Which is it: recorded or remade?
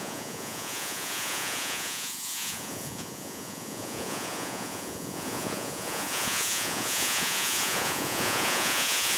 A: remade